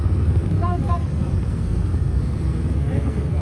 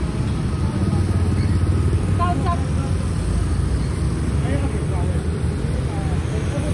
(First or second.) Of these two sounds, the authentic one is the second